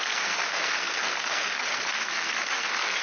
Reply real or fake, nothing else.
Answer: fake